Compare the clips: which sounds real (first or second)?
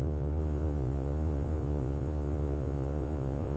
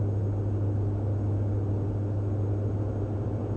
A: second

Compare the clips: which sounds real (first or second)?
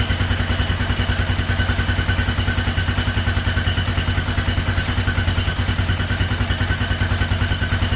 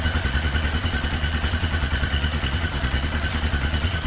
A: first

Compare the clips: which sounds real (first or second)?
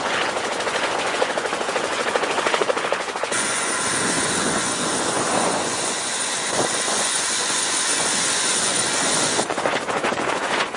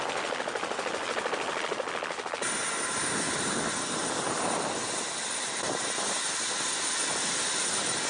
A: second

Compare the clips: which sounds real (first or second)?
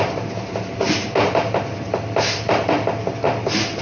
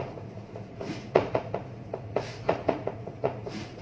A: first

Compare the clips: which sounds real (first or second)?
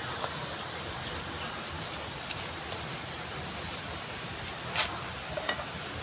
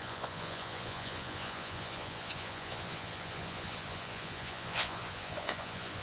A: first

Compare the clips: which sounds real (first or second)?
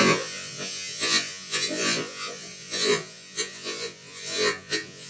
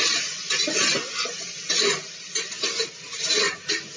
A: second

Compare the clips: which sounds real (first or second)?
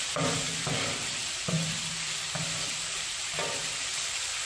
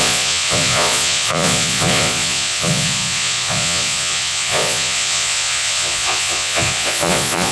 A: first